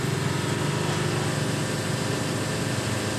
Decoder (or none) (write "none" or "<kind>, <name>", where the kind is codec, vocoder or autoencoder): none